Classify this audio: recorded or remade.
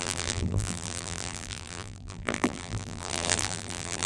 remade